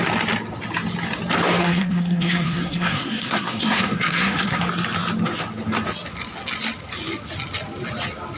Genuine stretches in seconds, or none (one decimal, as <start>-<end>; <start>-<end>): 0.0-1.6; 4.6-8.4